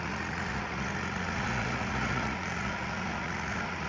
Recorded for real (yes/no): no